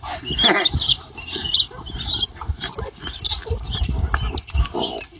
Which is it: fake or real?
real